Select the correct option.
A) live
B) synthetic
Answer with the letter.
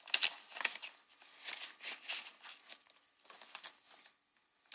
A